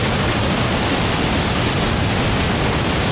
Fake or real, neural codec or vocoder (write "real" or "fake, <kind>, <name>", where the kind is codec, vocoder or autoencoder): real